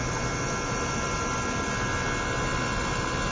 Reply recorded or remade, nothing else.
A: recorded